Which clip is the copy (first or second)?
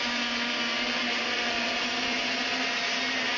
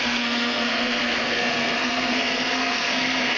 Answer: second